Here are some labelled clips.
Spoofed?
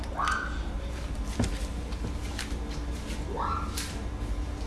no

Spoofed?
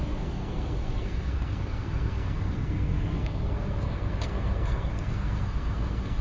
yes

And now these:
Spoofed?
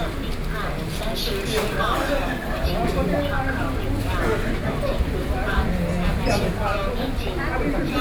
no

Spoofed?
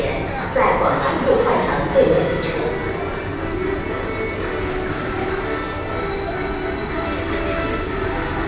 no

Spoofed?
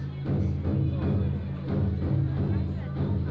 no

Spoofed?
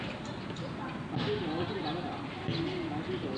no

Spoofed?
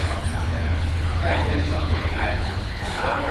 yes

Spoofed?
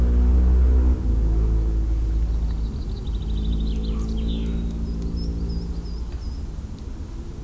no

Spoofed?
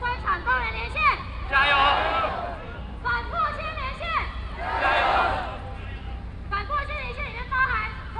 no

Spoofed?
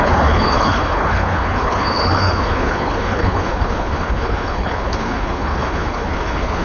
yes